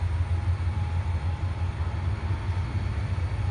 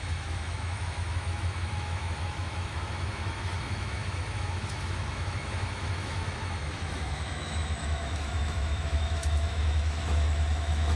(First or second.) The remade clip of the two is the second